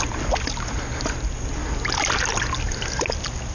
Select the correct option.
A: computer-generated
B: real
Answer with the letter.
B